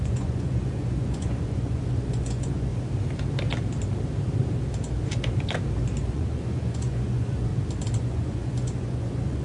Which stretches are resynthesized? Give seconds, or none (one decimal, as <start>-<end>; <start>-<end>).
0.0-2.7; 6.1-7.5; 8.0-9.4